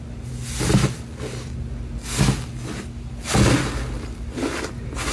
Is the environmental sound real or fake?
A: real